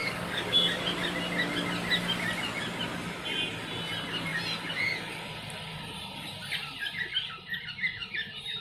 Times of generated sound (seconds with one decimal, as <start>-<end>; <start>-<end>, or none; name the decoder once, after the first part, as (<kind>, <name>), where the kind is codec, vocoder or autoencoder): 0.0-0.8 (codec, DAC)